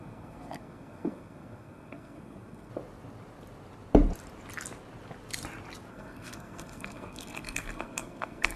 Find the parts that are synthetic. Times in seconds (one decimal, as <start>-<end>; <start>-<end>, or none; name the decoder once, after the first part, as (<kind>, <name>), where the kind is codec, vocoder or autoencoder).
0.0-2.7 (codec, SNAC); 5.9-8.6